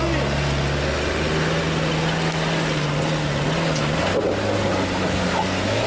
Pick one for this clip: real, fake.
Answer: real